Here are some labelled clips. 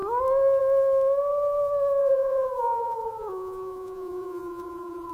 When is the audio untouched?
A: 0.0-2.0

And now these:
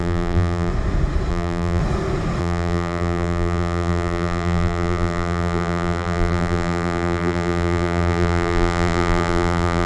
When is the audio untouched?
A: 0.7-1.3; 1.8-2.4